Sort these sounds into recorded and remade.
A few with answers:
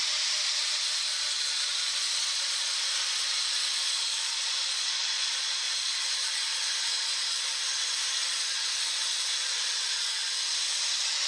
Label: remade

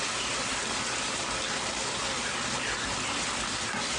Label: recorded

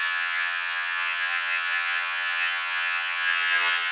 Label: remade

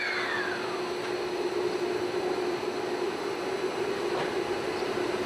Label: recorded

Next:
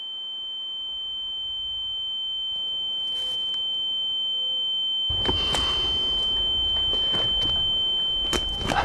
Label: recorded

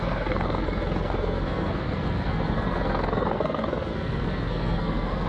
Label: remade